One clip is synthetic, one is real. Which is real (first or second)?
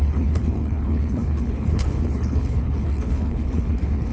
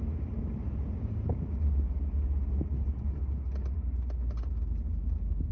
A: second